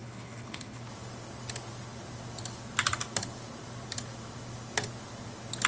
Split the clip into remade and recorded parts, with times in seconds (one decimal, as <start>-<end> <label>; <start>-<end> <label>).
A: 0.0-0.8 remade; 0.8-5.7 recorded